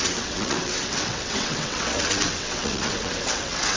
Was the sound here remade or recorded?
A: remade